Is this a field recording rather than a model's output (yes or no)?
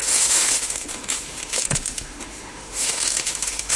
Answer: no